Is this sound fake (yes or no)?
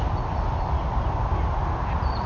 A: no